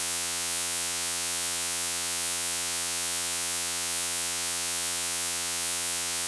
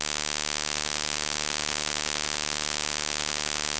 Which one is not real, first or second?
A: first